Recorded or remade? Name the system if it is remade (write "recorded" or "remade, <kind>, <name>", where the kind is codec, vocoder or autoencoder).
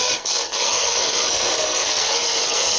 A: remade, codec, SNAC